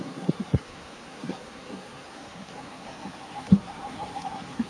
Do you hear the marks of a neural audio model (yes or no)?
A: yes